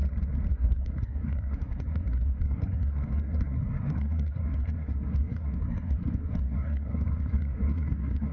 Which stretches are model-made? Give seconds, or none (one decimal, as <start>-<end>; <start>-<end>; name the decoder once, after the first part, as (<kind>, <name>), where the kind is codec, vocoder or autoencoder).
0.5-8.3 (codec, SNAC)